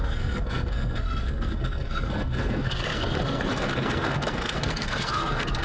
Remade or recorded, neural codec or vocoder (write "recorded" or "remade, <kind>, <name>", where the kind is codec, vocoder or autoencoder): remade, codec, SNAC